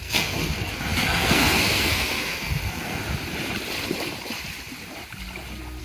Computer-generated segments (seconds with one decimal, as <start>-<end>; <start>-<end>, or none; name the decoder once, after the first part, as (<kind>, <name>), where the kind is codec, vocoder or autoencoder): 0.0-3.0 (codec, SNAC)